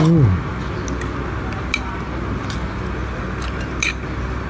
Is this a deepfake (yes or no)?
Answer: no